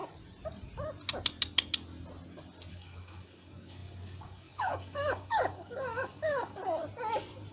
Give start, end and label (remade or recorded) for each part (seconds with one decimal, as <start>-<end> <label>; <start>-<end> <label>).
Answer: 0.0-2.7 recorded; 2.7-6.6 remade; 6.6-7.5 recorded